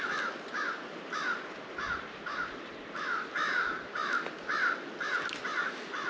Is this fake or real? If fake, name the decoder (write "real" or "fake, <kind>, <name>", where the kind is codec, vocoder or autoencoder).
real